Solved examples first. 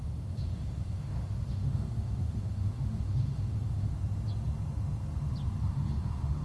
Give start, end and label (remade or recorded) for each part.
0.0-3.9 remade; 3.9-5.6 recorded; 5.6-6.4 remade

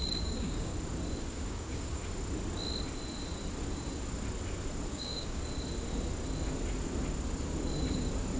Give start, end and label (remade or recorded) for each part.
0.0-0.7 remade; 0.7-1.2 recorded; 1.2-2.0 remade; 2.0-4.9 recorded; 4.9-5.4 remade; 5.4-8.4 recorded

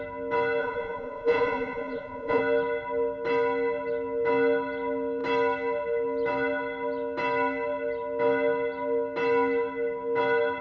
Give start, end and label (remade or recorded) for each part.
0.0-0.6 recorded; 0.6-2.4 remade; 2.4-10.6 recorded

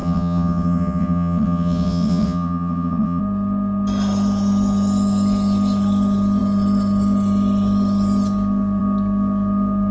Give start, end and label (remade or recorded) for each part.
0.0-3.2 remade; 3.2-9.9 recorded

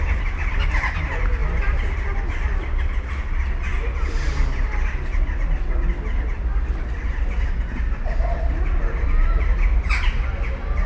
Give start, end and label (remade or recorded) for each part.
0.0-10.9 recorded

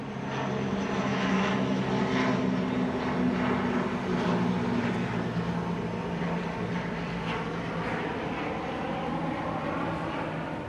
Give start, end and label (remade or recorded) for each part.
0.0-1.1 recorded; 1.1-1.8 remade; 1.8-10.7 recorded